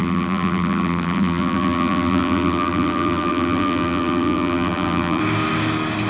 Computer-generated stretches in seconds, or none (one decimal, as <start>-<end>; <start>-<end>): 0.0-5.2